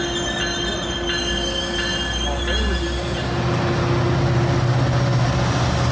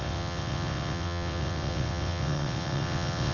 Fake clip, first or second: second